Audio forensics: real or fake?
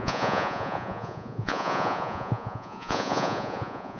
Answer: fake